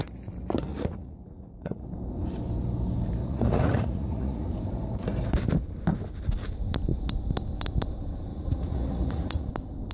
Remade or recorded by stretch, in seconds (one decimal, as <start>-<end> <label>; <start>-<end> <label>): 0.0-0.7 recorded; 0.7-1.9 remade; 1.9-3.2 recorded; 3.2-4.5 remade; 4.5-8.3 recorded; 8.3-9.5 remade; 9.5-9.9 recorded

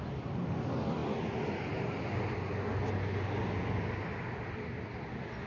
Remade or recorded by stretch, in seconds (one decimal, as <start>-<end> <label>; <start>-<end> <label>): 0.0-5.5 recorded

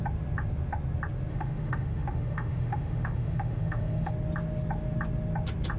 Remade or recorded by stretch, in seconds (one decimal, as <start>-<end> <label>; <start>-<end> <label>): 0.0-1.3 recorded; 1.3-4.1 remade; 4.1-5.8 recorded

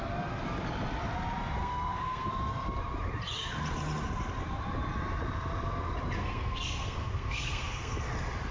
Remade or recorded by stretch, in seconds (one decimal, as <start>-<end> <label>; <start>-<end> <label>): 0.0-1.6 recorded; 1.6-2.3 remade; 2.3-6.2 recorded; 6.2-8.1 remade; 8.1-8.5 recorded